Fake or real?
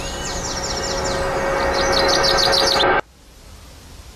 real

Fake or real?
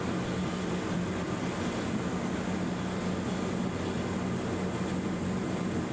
real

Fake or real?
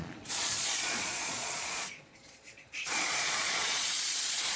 fake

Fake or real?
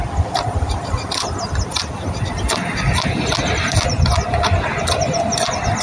real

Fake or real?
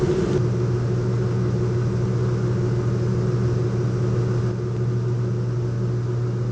real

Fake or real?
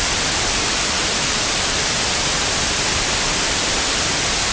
fake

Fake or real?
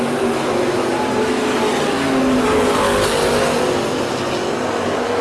real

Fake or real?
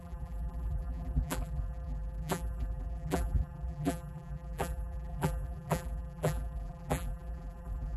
fake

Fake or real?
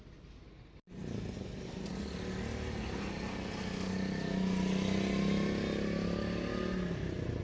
real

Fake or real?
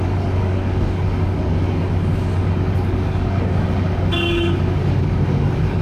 fake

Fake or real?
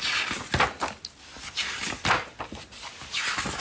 real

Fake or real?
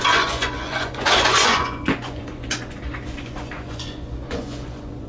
fake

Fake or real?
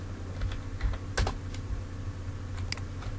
real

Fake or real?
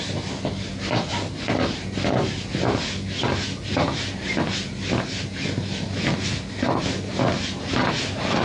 real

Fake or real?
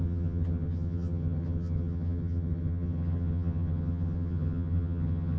fake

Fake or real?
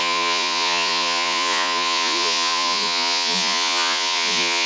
fake